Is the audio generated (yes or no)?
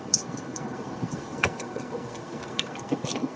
yes